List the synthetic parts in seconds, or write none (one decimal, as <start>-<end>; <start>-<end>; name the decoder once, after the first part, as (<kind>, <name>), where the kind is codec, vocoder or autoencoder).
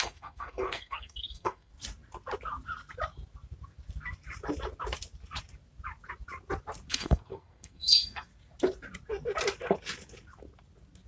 0.0-1.7 (codec, SNAC); 6.9-8.3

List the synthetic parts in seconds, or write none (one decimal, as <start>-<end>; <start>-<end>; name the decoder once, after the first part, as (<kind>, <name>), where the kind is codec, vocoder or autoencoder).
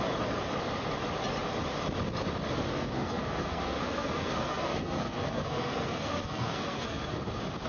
2.7-7.3 (codec, SNAC)